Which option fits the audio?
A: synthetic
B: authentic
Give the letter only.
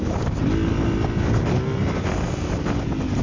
B